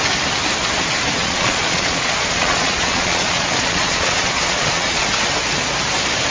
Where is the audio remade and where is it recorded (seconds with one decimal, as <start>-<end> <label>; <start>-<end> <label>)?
0.0-1.2 recorded; 1.2-5.0 remade; 5.0-6.3 recorded